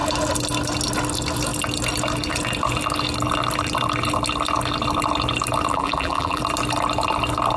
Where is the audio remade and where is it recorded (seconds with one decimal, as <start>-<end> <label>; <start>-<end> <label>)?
0.0-5.7 recorded; 5.7-6.4 remade; 6.4-7.6 recorded